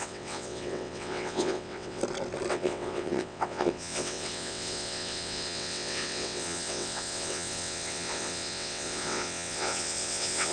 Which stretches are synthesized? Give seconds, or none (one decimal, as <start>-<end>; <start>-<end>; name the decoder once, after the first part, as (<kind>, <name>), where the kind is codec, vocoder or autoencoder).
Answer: 0.0-2.0 (vocoder, WaveNeXt); 2.5-10.5